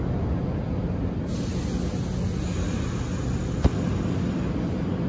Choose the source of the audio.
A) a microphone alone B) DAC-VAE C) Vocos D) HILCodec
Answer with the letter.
A